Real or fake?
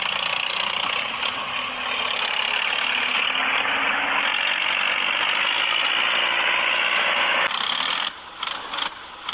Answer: real